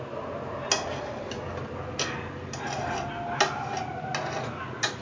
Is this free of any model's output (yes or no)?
yes